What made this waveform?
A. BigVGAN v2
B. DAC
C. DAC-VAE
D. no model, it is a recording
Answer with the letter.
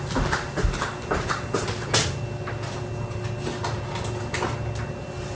D